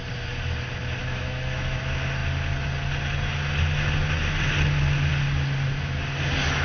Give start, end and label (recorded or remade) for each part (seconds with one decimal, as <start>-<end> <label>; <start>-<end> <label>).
0.0-1.0 recorded; 1.0-1.8 remade; 1.8-6.6 recorded